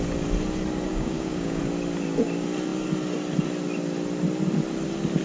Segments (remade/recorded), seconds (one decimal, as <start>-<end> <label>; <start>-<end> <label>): 0.0-0.9 recorded; 0.9-1.6 remade; 1.6-5.2 recorded